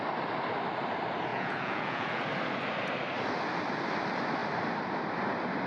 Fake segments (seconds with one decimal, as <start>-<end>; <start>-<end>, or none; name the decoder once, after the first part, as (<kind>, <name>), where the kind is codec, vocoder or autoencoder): 1.3-2.2 (vocoder, Vocos)